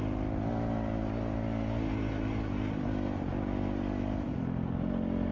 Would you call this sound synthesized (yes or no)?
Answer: no